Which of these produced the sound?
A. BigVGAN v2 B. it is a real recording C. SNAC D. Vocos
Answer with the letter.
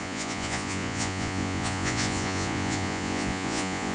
D